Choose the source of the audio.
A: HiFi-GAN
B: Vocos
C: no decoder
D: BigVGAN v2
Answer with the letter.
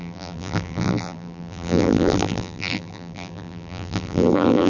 D